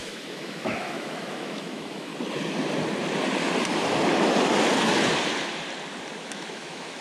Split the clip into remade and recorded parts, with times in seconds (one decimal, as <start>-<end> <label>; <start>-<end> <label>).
0.0-2.1 remade; 2.1-6.3 recorded; 6.3-7.0 remade